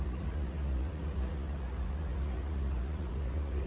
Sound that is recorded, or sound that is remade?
remade